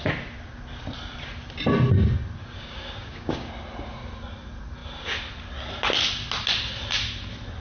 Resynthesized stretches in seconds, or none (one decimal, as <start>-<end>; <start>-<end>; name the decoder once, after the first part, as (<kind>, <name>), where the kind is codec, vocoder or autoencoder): 2.4-3.5 (codec, DAC)